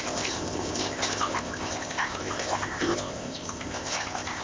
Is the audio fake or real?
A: fake